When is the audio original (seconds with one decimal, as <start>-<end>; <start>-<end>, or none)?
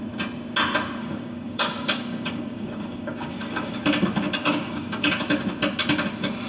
0.0-1.0; 3.8-4.4; 5.2-6.5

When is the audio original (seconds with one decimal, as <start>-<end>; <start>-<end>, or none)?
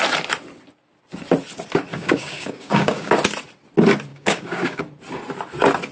0.0-1.9; 3.1-4.1; 4.8-5.9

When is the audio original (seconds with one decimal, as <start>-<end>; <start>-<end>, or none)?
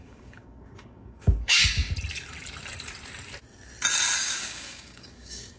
1.8-4.2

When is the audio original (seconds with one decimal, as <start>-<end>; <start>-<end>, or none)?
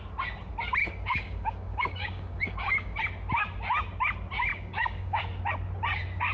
0.0-0.8; 3.0-4.5; 5.2-6.3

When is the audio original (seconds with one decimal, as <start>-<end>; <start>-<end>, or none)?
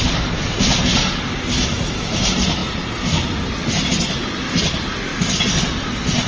0.0-6.3